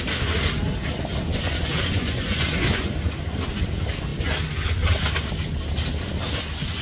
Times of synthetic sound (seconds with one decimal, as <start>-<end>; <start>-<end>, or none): 1.2-2.9